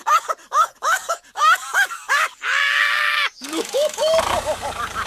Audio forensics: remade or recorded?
remade